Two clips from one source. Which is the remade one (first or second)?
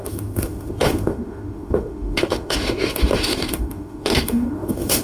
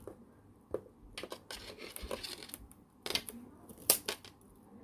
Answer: first